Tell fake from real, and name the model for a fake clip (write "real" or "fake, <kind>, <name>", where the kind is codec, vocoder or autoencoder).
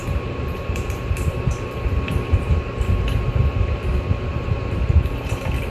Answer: fake, vocoder, BigVGAN v2